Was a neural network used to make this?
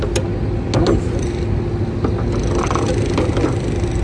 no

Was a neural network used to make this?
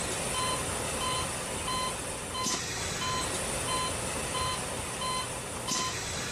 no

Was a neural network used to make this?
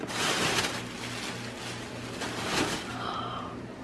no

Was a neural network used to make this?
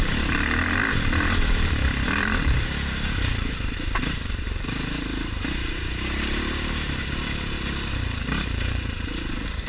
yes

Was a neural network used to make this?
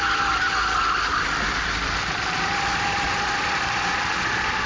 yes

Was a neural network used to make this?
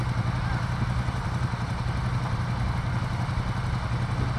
no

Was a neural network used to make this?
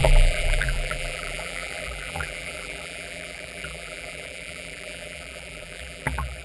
yes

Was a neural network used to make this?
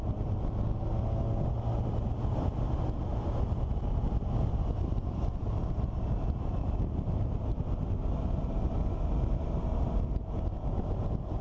no